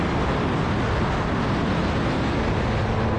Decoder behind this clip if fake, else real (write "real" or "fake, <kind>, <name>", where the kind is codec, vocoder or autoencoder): real